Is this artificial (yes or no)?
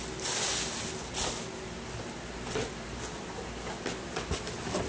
no